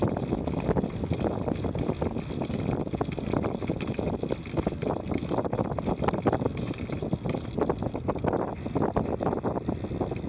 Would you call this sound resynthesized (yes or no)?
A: no